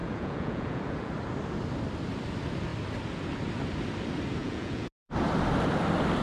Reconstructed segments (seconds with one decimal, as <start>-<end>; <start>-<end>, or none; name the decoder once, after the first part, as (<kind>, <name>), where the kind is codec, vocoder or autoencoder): 0.0-1.1 (vocoder, Vocos); 4.4-4.9